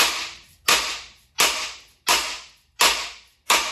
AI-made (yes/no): no